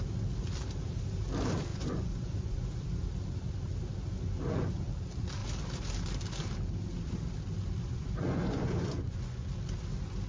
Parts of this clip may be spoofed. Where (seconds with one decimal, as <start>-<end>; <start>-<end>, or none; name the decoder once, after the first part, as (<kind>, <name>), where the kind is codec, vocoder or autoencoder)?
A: 1.7-2.7 (vocoder, Vocos); 7.8-9.5